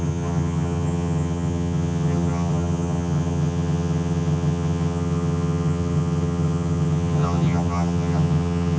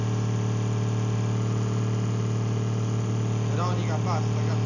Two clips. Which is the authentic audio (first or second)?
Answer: second